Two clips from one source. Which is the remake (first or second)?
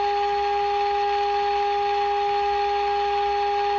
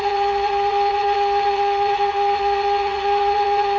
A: second